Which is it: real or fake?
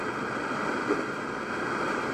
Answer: real